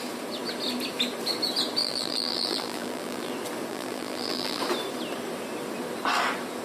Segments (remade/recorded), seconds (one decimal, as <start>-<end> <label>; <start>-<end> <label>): 0.0-1.8 recorded; 1.8-3.3 remade; 3.3-3.7 recorded; 3.7-4.6 remade; 4.6-6.6 recorded